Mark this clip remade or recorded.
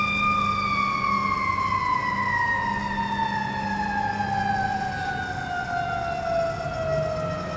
recorded